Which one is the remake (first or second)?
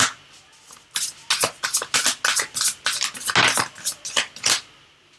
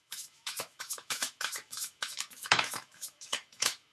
second